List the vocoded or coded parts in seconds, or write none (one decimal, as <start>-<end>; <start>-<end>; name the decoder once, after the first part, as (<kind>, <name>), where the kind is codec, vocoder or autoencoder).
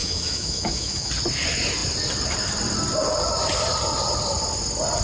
0.0-1.1 (autoencoder, DAC-VAE)